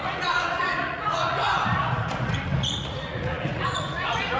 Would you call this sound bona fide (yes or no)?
no